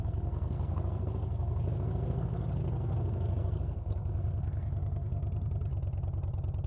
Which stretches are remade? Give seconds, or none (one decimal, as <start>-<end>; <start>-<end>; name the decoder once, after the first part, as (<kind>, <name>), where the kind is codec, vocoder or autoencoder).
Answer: 0.0-5.2 (codec, SNAC)